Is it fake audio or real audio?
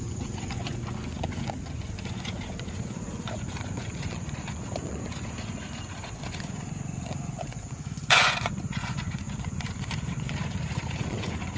fake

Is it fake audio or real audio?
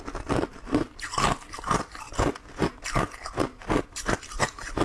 real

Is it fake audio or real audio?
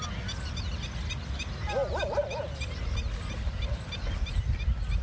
real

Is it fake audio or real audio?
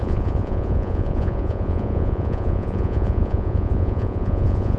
fake